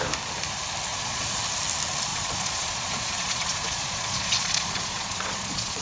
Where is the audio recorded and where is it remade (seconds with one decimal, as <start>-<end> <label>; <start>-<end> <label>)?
0.0-0.9 recorded; 0.9-1.4 remade; 1.4-2.1 recorded; 2.1-5.8 remade

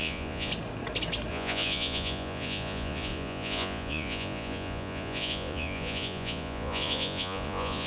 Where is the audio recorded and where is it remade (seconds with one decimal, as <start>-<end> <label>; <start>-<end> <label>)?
0.0-0.5 remade; 0.5-1.3 recorded; 1.3-7.9 remade

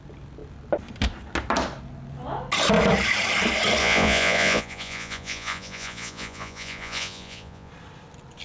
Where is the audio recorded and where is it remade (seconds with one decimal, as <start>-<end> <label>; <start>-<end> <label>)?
0.0-3.8 recorded; 3.8-7.7 remade; 7.7-8.4 recorded

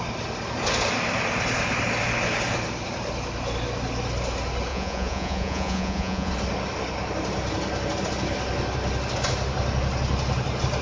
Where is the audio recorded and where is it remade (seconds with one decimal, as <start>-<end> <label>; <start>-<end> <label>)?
0.0-4.7 recorded; 4.7-6.3 remade; 6.3-10.8 recorded

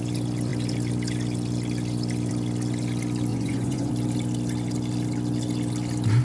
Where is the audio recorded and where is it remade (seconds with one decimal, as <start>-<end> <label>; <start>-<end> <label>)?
0.0-3.3 recorded; 3.3-3.9 remade; 3.9-6.2 recorded

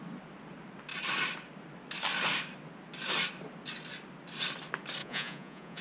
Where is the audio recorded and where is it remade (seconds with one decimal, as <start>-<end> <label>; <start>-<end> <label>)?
0.0-5.0 recorded; 5.0-5.8 remade

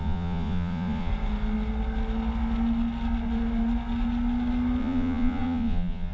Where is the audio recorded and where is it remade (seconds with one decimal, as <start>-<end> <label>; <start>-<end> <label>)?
0.0-1.1 remade; 1.1-4.8 recorded; 4.8-6.1 remade

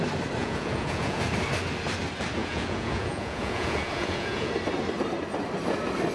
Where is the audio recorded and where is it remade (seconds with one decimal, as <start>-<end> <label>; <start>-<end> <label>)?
0.0-0.4 recorded; 0.4-1.2 remade; 1.2-2.4 recorded; 2.4-4.5 remade; 4.5-6.1 recorded